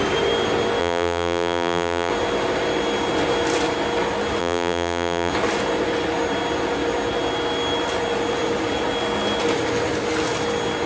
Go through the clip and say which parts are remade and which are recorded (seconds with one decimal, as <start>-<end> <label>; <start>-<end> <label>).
0.0-0.8 recorded; 0.8-2.1 remade; 2.1-4.4 recorded; 4.4-5.3 remade; 5.3-10.9 recorded